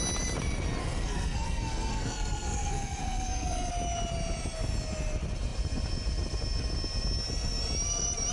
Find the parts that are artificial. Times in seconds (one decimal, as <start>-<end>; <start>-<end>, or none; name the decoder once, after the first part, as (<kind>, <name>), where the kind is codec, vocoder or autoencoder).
0.8-3.7 (codec, SNAC)